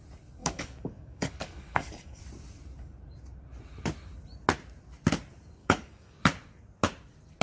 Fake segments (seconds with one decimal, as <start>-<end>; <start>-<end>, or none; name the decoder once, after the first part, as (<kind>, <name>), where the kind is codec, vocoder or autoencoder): 0.4-2.2 (codec, DAC); 5.6-6.2